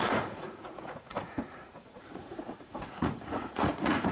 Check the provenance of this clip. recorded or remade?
remade